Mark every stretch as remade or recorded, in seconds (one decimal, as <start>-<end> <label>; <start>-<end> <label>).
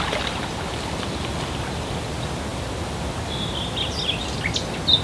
0.0-5.0 recorded